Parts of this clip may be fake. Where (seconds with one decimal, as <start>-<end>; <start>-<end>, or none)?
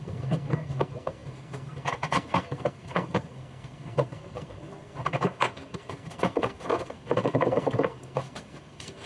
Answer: 0.0-9.1